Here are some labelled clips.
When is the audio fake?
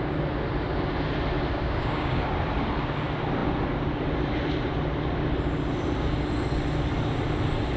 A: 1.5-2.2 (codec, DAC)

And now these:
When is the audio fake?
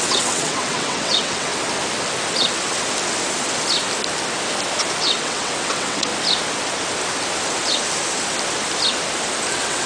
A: 0.0-1.5 (vocoder, WaveNeXt); 5.0-6.1; 9.5-9.9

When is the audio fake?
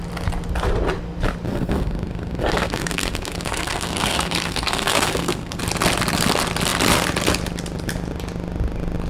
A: 1.5-5.6 (codec, SNAC)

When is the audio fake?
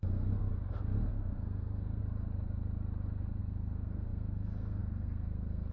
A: 0.0-0.5 (codec, SNAC); 1.1-2.0; 3.4-5.7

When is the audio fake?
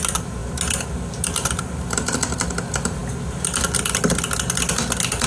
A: none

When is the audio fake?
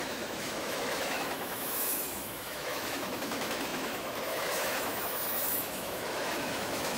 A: 0.0-7.0 (autoencoder, DAC-VAE)